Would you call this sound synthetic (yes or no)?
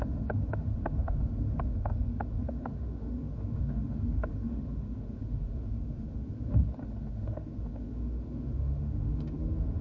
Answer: yes